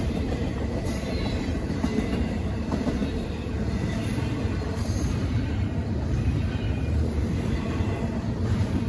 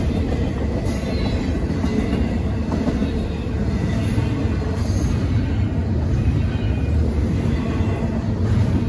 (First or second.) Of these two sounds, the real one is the second